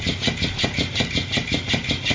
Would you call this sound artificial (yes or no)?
no